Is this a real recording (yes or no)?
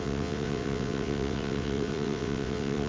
no